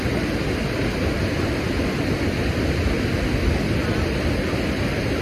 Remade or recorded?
recorded